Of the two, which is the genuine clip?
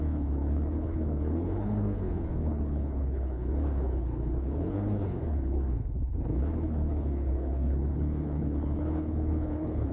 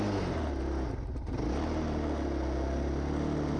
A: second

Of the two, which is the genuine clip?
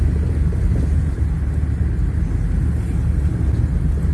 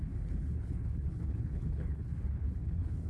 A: first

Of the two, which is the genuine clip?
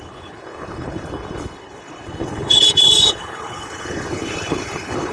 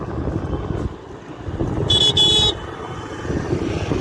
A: second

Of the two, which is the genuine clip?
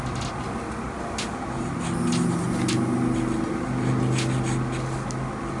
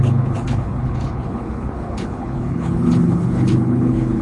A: first